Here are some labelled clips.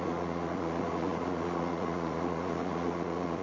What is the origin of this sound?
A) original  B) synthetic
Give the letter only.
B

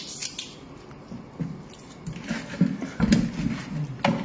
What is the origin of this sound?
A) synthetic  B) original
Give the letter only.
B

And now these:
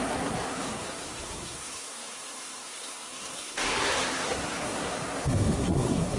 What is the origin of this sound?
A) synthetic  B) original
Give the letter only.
A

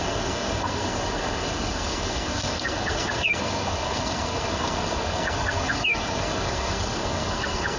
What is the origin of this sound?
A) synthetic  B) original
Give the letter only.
A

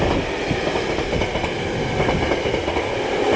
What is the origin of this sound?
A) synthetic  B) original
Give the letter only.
B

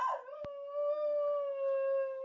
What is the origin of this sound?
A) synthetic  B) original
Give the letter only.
B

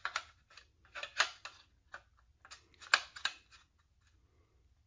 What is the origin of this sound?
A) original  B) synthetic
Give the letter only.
A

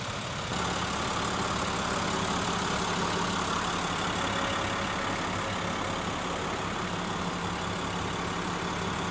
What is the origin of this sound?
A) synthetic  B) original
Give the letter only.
B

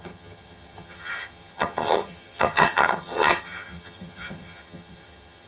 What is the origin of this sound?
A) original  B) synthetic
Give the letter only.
B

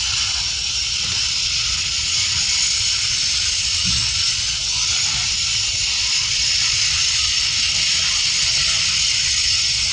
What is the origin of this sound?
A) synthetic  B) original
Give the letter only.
B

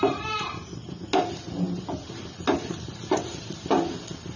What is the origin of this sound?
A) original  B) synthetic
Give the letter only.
A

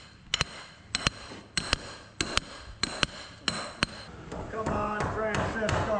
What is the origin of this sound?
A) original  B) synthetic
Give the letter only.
A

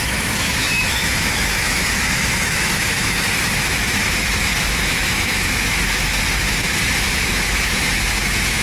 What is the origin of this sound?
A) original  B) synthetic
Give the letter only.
B